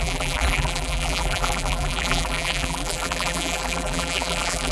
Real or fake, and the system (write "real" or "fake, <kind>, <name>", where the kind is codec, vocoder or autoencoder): fake, vocoder, BigVGAN v2